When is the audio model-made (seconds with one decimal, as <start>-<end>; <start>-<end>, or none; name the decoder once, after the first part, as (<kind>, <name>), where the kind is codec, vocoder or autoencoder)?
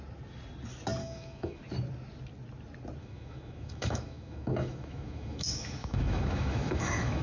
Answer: 1.0-1.6 (autoencoder, DAC-VAE); 3.0-7.2